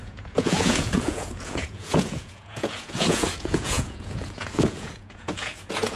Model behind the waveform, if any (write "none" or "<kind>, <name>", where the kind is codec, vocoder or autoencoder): vocoder, Vocos